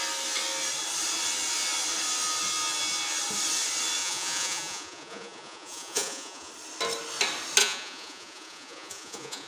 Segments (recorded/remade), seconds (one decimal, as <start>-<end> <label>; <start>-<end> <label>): 0.0-4.0 recorded; 4.0-6.5 remade; 6.5-7.6 recorded; 7.6-9.5 remade